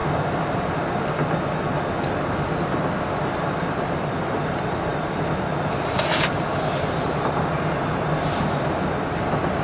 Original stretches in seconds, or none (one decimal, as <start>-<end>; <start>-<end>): 0.0-9.6